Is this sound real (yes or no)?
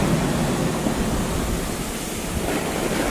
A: yes